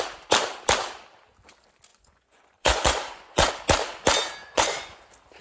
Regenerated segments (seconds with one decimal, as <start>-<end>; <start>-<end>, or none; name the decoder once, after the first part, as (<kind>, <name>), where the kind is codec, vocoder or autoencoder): 1.9-3.5 (vocoder, Vocos); 4.4-5.0